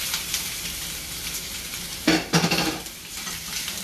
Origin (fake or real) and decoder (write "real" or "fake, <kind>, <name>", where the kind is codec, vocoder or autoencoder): fake, vocoder, BigVGAN v2